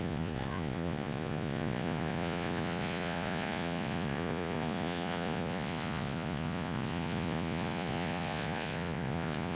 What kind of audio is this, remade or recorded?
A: remade